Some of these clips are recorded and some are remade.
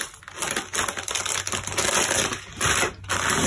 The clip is recorded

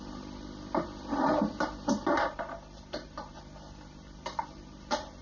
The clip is recorded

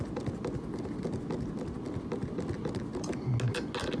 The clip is recorded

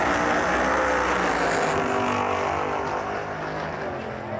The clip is recorded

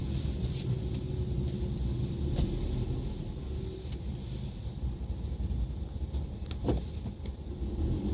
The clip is recorded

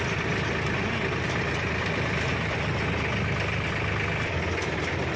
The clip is recorded